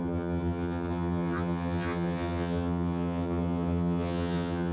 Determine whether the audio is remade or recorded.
remade